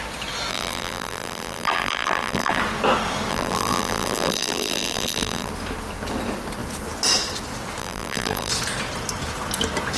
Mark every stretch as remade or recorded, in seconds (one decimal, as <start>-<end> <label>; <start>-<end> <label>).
0.0-0.5 recorded; 0.5-2.6 remade; 2.6-3.3 recorded; 3.3-5.5 remade; 5.5-7.8 recorded; 7.8-8.5 remade; 8.5-10.0 recorded